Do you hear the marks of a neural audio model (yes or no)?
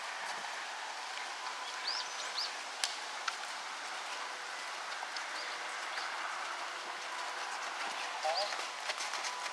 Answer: no